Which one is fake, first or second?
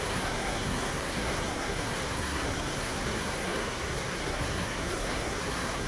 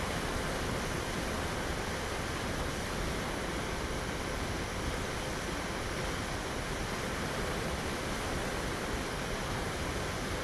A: first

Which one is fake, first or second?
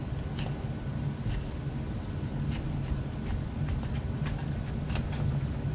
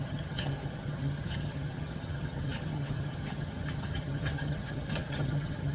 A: second